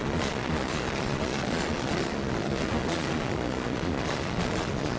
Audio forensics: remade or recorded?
remade